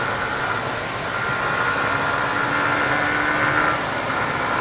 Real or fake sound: real